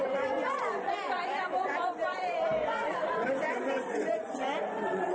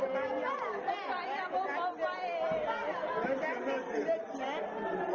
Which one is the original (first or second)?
second